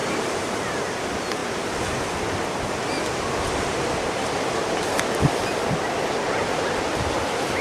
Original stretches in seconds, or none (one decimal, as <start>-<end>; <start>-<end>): 0.8-7.6